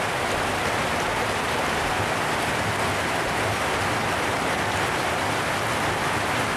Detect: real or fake real